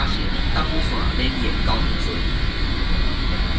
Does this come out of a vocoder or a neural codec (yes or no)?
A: no